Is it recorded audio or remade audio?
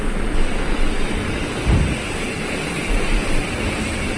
recorded